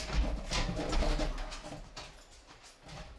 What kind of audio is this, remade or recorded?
recorded